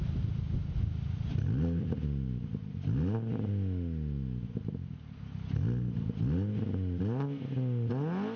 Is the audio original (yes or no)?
yes